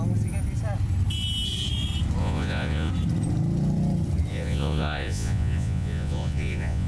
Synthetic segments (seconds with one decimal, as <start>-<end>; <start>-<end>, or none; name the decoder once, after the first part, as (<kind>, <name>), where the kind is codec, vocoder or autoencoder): 2.2-2.9 (vocoder, Vocos); 4.3-6.9